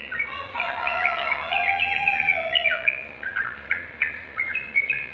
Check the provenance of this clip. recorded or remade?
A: remade